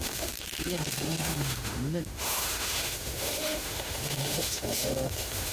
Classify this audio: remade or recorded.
remade